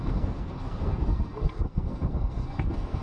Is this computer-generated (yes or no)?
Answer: yes